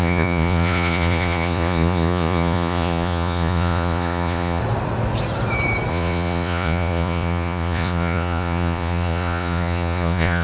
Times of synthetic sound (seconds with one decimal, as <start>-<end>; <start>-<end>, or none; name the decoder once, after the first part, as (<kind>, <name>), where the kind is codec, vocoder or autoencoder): 0.0-4.6 (vocoder, Vocos); 5.9-10.4